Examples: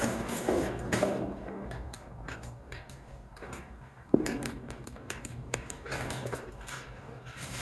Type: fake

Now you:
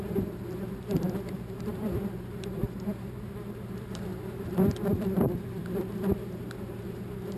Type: fake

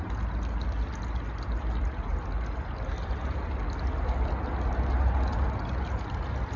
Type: real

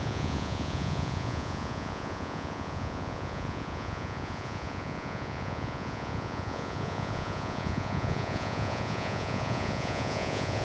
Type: fake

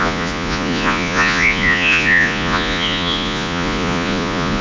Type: fake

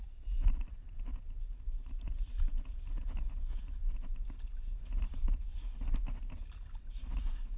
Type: real